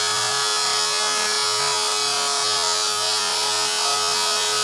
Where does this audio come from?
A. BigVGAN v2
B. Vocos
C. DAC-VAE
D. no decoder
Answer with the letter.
D